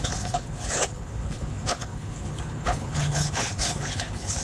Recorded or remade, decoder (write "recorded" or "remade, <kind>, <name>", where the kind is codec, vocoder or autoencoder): remade, codec, HILCodec